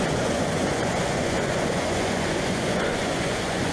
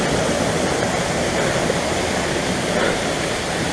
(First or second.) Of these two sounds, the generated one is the first